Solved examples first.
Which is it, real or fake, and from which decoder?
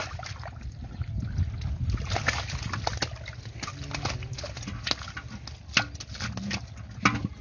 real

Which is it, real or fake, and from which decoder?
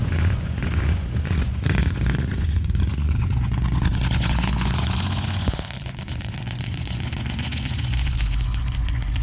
fake, vocoder, Vocos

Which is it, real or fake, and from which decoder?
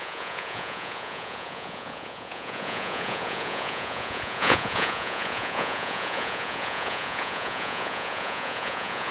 fake, vocoder, Vocos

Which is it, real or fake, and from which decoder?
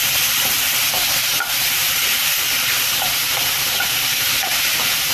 real